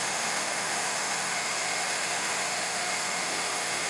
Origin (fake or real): fake